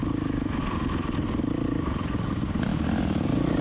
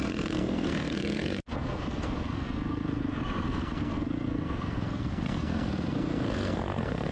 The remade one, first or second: second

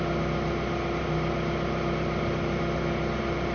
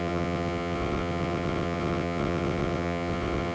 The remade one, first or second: second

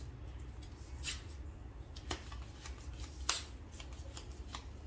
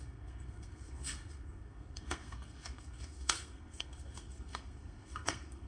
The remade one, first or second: second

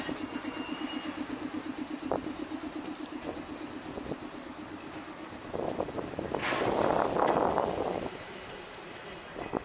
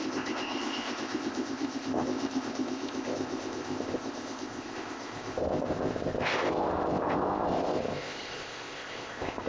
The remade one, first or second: second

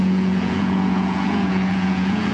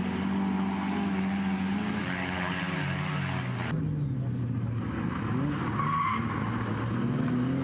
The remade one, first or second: first